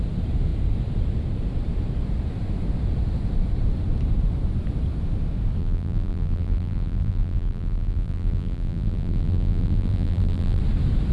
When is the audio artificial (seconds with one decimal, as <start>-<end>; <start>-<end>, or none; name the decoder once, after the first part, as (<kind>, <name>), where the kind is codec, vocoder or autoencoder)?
5.6-10.6 (vocoder, BigVGAN v2)